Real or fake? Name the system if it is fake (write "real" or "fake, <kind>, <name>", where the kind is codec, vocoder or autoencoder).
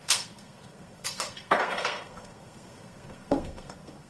fake, codec, SNAC